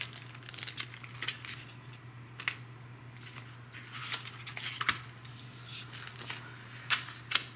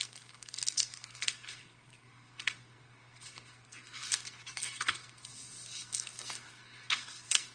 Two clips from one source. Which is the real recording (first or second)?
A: first